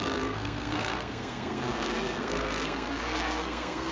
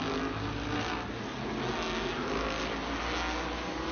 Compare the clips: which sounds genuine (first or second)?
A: second